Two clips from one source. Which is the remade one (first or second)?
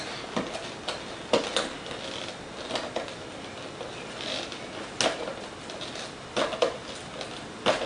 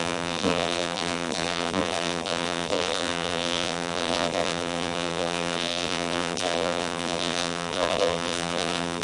second